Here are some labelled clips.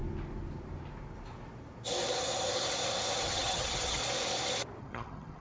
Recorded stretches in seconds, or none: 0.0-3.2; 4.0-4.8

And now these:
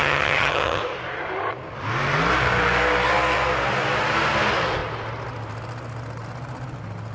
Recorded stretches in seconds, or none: 0.8-7.1